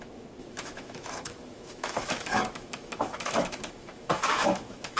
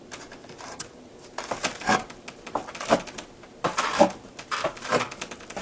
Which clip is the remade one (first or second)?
first